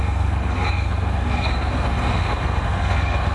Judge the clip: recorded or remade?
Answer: remade